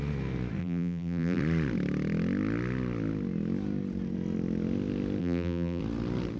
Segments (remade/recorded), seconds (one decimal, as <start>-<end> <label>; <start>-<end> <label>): 0.0-0.6 recorded; 0.6-1.4 remade; 1.4-5.2 recorded; 5.2-5.8 remade; 5.8-6.4 recorded

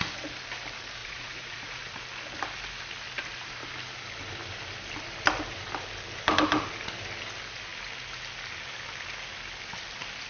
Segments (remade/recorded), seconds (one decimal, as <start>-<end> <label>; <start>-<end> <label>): 0.0-1.0 recorded; 1.0-1.8 remade; 1.8-10.3 recorded

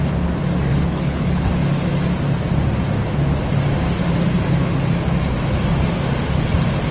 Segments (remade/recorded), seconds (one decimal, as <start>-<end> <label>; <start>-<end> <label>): 0.0-0.7 recorded; 0.7-1.5 remade; 1.5-6.9 recorded